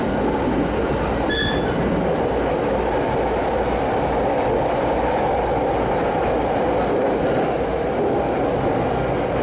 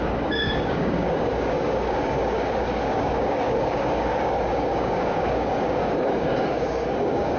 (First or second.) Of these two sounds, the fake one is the second